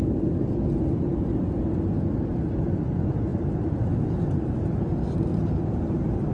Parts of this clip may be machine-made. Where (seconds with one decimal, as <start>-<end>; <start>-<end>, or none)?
3.3-4.7; 5.3-6.3